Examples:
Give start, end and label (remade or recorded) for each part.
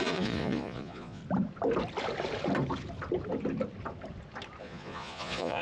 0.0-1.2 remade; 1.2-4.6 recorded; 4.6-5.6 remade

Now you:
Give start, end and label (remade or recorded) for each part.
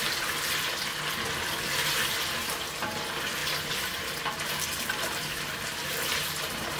0.0-6.8 recorded